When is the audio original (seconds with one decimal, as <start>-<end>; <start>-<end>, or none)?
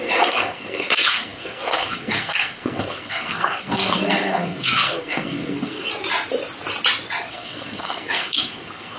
5.9-7.3